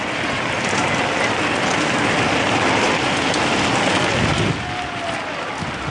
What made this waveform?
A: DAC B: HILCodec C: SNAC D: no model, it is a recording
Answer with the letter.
D